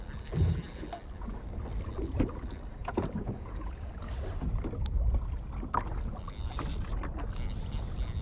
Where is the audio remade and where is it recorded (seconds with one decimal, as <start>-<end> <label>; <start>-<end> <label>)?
0.0-2.8 recorded; 2.8-3.9 remade; 3.9-8.2 recorded